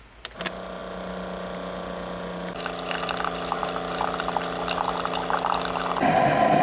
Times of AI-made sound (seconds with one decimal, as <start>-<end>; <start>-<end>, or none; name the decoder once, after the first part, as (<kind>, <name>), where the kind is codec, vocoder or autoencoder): none